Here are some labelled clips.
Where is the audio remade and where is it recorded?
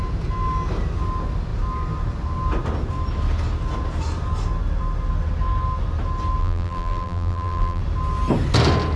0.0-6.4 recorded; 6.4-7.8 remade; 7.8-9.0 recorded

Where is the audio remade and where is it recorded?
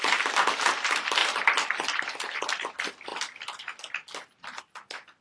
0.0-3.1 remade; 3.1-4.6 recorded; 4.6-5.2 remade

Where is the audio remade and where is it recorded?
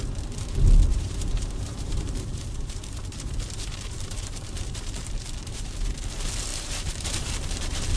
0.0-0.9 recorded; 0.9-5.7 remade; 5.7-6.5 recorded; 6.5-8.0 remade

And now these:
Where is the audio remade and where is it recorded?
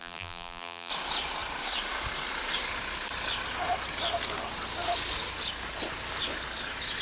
0.0-0.9 remade; 0.9-7.0 recorded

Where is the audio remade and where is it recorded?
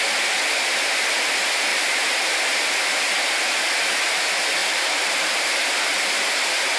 0.0-1.7 recorded; 1.7-2.3 remade; 2.3-4.6 recorded; 4.6-5.4 remade; 5.4-6.8 recorded